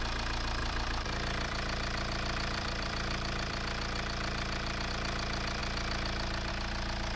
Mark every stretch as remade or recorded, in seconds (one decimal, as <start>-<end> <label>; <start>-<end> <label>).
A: 0.0-0.6 recorded; 0.6-4.9 remade; 4.9-7.2 recorded